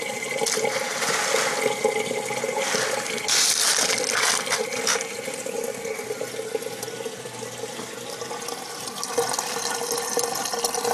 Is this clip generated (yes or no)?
no